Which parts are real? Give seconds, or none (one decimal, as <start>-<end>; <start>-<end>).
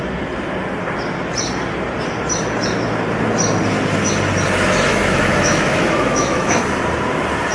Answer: 0.0-4.9; 6.6-7.5